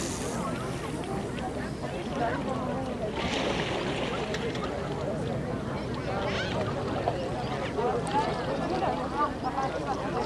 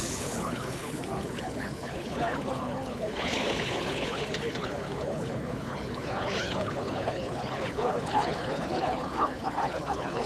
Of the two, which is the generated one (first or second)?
second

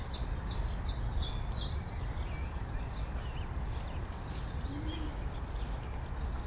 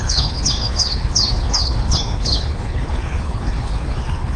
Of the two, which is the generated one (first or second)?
second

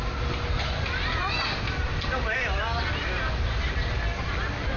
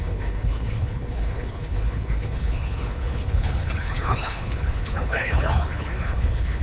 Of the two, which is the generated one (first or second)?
second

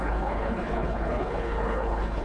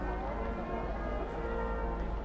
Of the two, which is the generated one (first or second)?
first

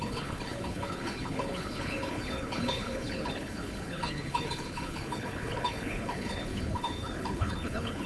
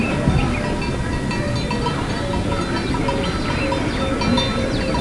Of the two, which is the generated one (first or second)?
first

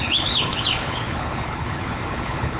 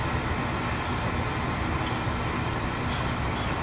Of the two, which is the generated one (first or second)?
first